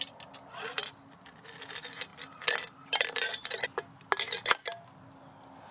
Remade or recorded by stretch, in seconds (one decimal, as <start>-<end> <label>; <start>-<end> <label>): 0.0-5.7 recorded